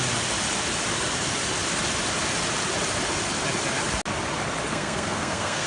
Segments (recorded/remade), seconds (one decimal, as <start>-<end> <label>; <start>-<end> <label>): 0.0-4.7 recorded; 4.7-5.7 remade